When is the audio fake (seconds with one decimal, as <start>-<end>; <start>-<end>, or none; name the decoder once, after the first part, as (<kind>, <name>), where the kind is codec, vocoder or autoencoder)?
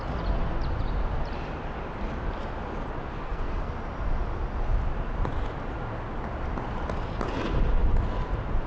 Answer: 3.1-3.7 (codec, SNAC)